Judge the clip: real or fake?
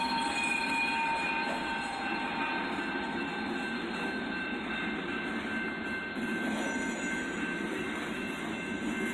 real